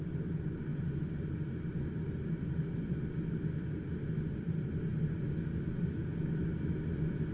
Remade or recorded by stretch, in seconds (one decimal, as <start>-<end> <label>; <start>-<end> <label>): 0.0-7.3 recorded